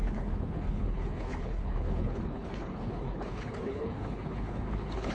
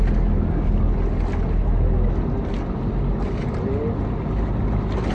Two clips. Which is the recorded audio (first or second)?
second